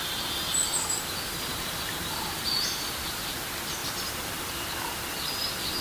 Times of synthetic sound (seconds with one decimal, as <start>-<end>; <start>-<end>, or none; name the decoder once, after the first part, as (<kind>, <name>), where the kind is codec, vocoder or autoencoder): none